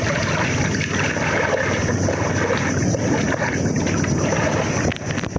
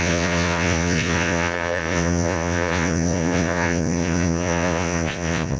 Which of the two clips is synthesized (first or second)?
second